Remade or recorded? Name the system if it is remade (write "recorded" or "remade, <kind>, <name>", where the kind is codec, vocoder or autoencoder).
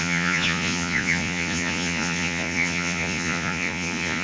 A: remade, vocoder, Vocos